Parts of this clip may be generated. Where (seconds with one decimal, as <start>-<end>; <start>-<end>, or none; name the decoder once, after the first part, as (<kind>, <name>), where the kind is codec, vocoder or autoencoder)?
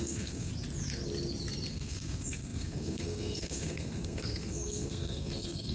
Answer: 0.0-0.5 (codec, SNAC); 1.7-5.7